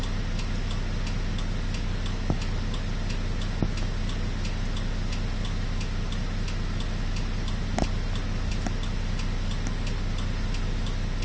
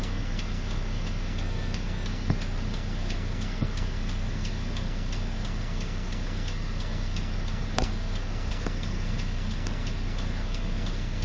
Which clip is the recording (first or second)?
first